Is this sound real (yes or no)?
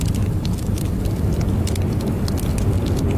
no